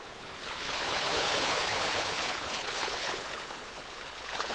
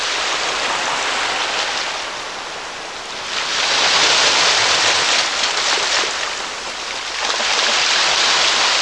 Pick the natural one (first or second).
second